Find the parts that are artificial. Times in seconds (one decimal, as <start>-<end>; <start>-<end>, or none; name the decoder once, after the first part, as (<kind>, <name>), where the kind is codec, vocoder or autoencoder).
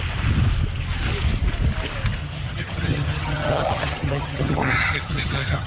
2.2-5.7 (vocoder, HiFi-GAN)